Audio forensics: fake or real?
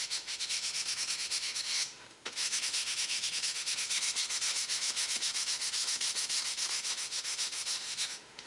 fake